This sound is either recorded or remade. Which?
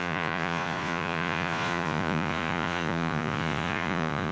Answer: remade